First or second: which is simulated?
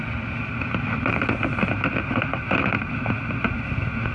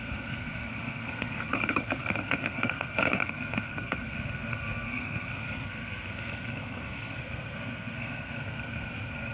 second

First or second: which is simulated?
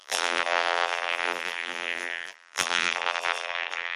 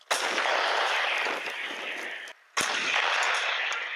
first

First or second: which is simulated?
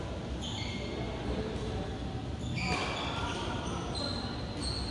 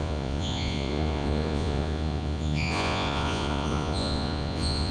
second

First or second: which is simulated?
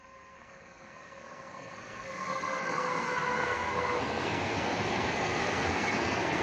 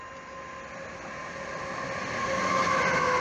first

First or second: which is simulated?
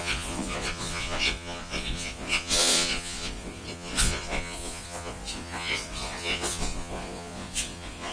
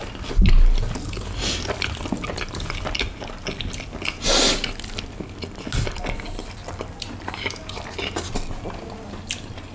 first